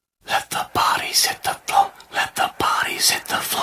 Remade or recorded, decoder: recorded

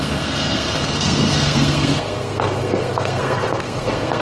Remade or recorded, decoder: remade, codec, SNAC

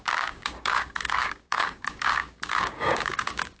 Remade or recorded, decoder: remade, codec, DAC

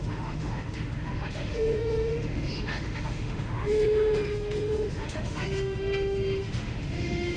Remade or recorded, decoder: remade, autoencoder, DAC-VAE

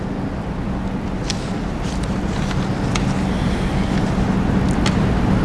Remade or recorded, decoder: recorded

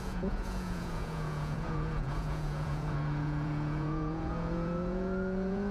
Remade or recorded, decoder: remade, vocoder, Vocos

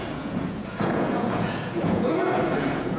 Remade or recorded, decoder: remade, vocoder, Vocos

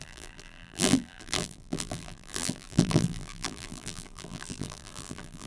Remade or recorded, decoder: remade, vocoder, BigVGAN v2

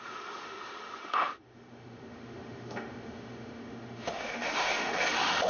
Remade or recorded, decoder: remade, autoencoder, DAC-VAE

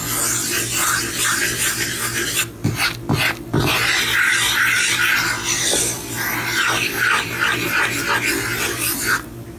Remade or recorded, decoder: recorded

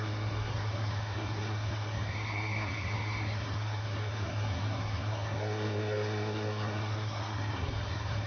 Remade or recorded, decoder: remade, codec, SNAC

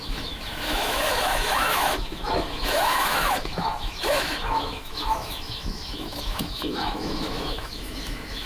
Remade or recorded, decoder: remade, autoencoder, DAC-VAE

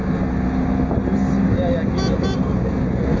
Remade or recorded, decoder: recorded